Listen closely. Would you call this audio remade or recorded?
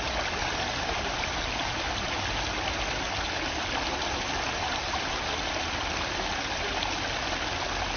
recorded